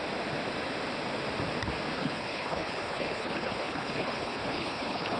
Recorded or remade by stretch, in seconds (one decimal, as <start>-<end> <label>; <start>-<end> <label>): 0.0-2.0 recorded; 2.0-5.2 remade